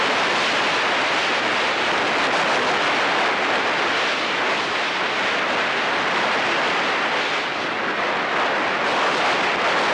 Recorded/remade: recorded